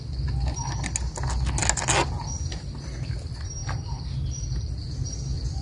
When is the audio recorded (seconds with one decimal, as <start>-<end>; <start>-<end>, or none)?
0.0-5.6